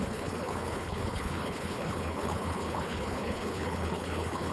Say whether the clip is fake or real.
fake